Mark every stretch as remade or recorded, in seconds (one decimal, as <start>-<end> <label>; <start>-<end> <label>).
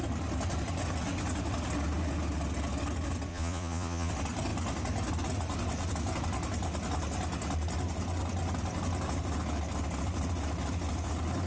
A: 0.0-3.3 recorded; 3.3-4.1 remade; 4.1-11.5 recorded